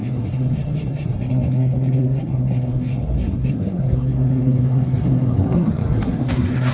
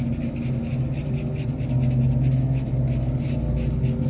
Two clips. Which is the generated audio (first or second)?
first